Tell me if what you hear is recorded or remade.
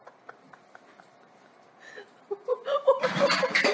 remade